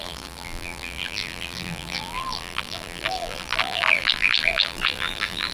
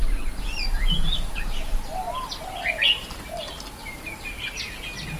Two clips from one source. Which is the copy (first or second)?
first